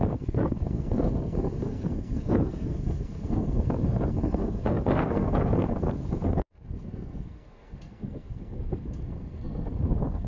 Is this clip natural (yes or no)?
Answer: no